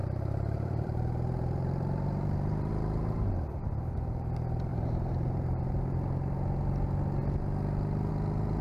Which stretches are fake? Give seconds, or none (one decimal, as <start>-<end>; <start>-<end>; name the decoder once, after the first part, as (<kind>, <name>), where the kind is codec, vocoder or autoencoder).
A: 0.0-2.7 (vocoder, BigVGAN v2); 4.7-5.7